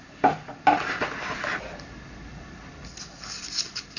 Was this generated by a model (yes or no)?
no